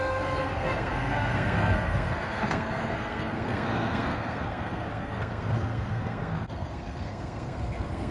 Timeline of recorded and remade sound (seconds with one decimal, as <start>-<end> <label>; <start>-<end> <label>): 0.0-8.1 remade